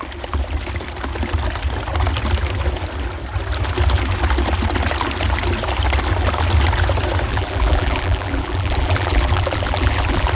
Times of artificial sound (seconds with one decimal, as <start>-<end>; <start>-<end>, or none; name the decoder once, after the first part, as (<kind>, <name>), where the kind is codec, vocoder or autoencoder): 7.3-10.3 (vocoder, BigVGAN v2)